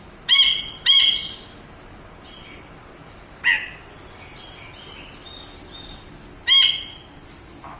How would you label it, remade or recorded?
recorded